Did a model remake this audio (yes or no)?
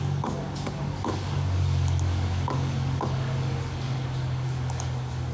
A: yes